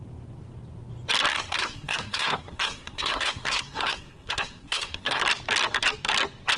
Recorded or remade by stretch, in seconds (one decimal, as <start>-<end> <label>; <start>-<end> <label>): 0.0-1.3 recorded; 1.3-5.2 remade; 5.2-6.6 recorded